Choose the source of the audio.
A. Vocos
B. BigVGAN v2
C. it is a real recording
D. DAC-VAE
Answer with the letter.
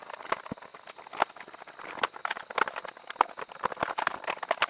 C